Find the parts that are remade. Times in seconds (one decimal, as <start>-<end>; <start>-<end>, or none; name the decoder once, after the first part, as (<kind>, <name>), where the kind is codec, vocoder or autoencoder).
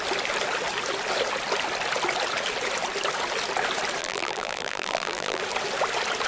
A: 4.0-5.4 (vocoder, BigVGAN v2)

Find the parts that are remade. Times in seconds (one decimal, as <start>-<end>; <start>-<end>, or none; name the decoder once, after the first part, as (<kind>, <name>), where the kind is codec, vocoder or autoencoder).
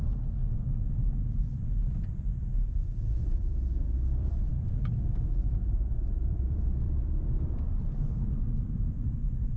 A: 0.0-0.4 (vocoder, BigVGAN v2); 1.4-9.6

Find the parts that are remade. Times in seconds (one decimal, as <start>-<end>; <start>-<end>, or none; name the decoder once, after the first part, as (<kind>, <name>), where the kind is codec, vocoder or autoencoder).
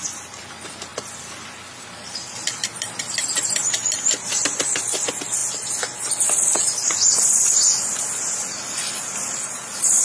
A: 0.0-10.0 (vocoder, BigVGAN v2)